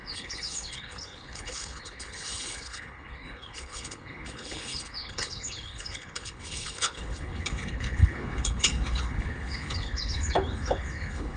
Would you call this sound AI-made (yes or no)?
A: yes